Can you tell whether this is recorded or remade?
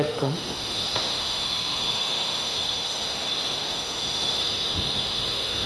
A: remade